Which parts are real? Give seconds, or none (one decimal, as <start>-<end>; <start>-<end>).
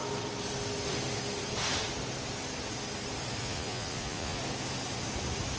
0.0-3.4; 4.4-5.6